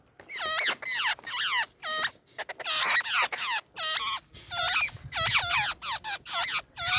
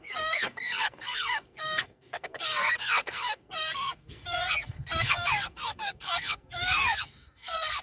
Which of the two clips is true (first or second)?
first